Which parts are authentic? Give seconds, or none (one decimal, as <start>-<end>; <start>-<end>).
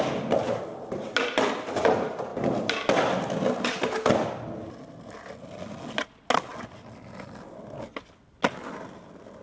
0.0-9.4